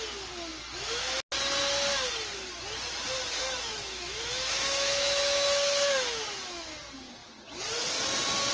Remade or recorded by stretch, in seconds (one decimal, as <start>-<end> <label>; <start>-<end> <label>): 0.0-3.4 recorded; 3.4-6.8 remade; 6.8-8.5 recorded